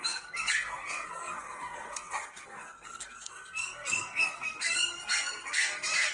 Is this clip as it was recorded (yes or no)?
no